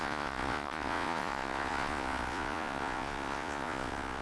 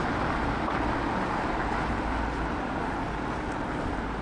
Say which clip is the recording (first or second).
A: second